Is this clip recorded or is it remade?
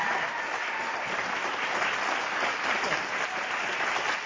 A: recorded